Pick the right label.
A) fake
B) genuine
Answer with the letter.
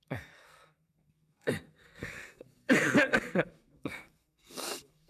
A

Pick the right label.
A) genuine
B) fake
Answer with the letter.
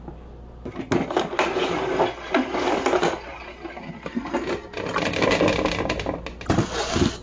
A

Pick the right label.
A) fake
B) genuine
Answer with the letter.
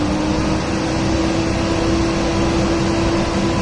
B